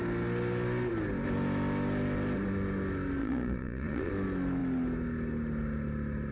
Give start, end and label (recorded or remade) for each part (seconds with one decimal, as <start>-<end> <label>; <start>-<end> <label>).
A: 0.0-3.2 recorded; 3.2-4.1 remade; 4.1-6.3 recorded